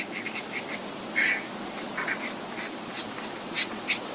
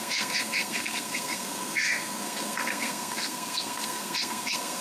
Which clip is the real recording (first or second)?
first